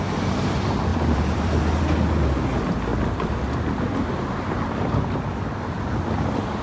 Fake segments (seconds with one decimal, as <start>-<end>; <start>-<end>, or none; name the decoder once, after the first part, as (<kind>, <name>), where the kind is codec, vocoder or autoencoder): 0.9-1.8 (vocoder, BigVGAN v2); 2.9-6.6